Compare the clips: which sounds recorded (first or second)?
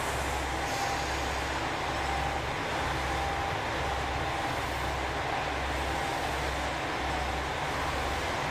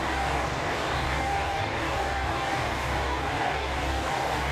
first